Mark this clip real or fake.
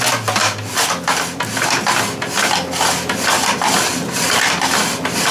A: real